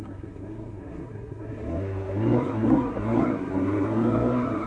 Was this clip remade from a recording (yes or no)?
yes